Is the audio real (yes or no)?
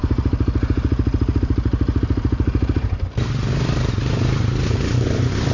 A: no